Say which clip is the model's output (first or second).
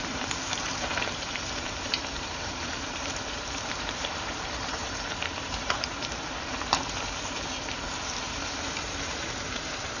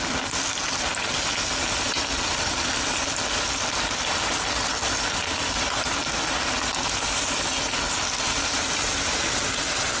first